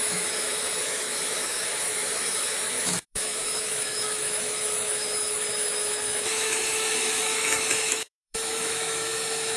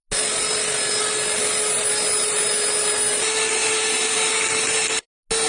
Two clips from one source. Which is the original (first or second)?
second